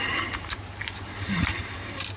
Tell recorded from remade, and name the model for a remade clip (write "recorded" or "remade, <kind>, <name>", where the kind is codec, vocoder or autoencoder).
recorded